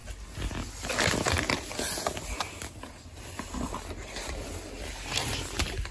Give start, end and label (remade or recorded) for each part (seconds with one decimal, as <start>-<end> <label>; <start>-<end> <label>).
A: 0.0-5.9 recorded